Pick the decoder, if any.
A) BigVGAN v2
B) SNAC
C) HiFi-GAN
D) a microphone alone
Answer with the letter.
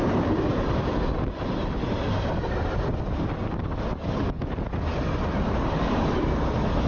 D